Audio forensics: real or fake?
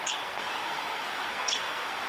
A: fake